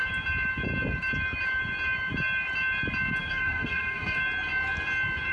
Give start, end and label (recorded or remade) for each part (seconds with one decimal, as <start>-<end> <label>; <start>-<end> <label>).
0.0-3.2 recorded; 3.2-4.2 remade; 4.2-5.3 recorded